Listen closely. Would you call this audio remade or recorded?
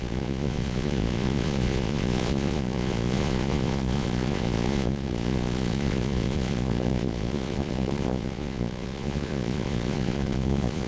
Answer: remade